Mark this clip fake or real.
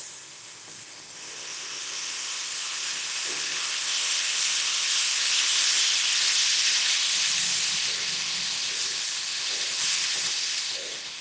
fake